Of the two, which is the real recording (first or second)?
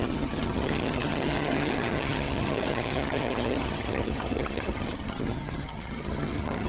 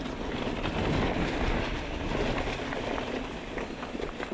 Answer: second